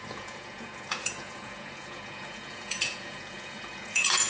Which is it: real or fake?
fake